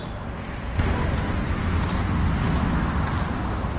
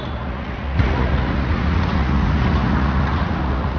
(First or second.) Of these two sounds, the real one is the first